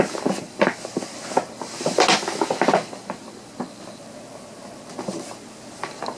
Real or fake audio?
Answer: real